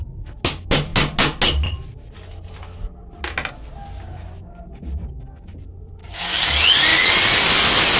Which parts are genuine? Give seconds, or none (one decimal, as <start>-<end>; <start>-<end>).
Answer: 0.0-6.0; 6.5-8.0